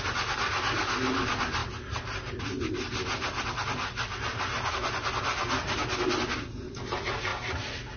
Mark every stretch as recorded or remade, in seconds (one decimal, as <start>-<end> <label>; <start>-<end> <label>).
0.0-8.0 recorded